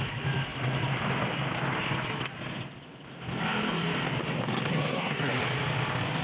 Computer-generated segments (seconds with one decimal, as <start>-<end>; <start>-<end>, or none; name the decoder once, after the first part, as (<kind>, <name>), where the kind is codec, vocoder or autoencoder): 4.7-5.4 (codec, SNAC)